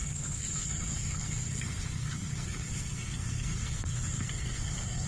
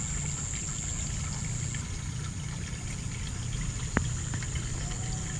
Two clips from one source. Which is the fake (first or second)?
first